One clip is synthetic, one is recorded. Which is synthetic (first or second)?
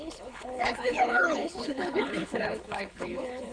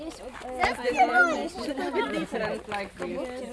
first